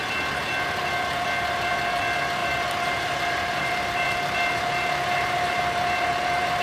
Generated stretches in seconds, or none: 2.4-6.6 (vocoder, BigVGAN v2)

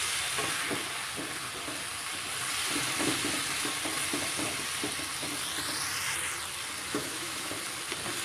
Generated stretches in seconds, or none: 6.9-7.5 (autoencoder, DAC-VAE)